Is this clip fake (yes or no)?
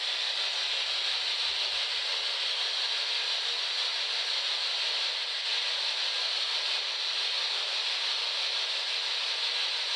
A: no